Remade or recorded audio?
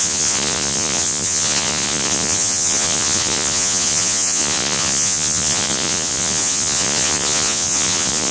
remade